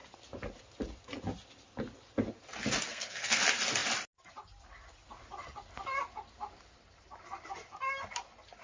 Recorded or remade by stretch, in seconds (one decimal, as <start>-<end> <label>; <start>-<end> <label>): 0.0-2.9 recorded; 2.9-3.4 remade; 3.4-8.6 recorded